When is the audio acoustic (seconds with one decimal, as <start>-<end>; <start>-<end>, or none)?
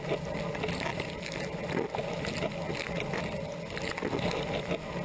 0.0-5.0